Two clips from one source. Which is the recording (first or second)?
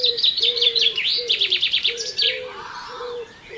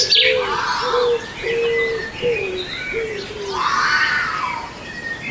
second